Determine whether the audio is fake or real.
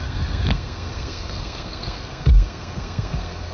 fake